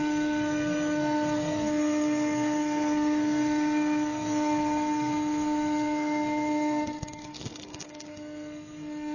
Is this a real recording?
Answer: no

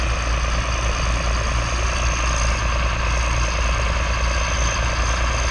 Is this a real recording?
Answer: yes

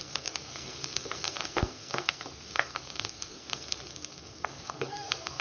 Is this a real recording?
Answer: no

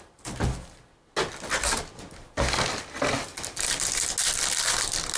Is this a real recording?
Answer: yes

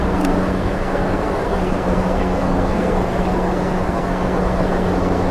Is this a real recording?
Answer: no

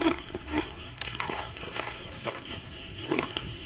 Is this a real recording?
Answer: no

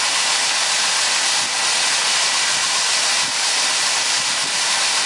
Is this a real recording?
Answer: yes